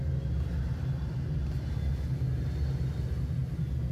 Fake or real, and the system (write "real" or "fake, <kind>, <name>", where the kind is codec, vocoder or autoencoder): real